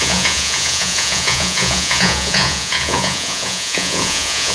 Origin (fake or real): fake